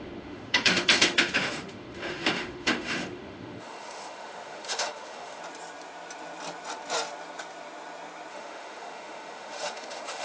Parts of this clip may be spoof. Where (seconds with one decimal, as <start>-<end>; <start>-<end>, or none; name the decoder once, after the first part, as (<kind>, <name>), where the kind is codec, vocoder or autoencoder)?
0.0-5.4 (autoencoder, DAC-VAE); 8.3-10.2